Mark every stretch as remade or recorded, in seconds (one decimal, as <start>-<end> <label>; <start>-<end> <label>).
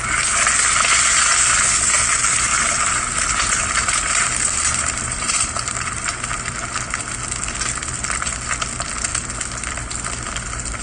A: 0.0-2.5 recorded; 2.5-6.4 remade; 6.4-10.8 recorded